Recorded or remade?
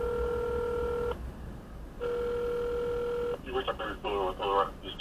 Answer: recorded